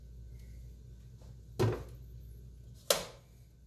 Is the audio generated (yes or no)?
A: no